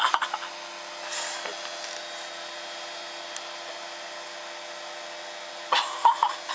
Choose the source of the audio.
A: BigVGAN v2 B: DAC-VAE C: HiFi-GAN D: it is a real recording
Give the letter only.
D